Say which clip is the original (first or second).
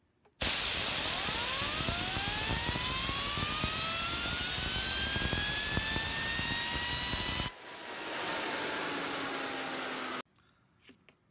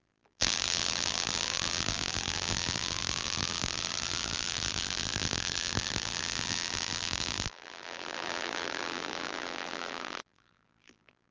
first